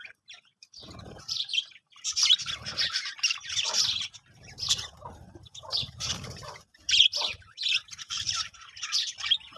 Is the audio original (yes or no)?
no